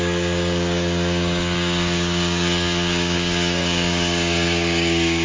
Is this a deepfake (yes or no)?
yes